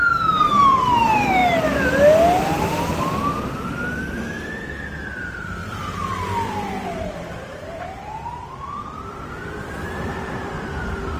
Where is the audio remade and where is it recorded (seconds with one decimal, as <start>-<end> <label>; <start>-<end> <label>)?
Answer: 0.0-1.4 remade; 1.4-3.5 recorded; 3.5-11.2 remade